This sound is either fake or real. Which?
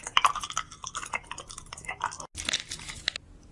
real